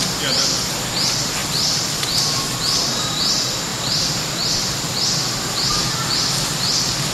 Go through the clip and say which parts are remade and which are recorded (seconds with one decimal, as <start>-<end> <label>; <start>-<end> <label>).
0.0-1.4 recorded; 1.4-2.4 remade; 2.4-3.7 recorded; 3.7-6.1 remade; 6.1-7.1 recorded